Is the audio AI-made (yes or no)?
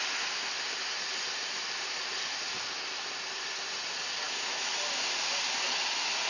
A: no